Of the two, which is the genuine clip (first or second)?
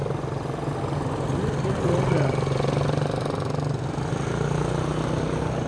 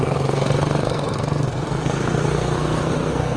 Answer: first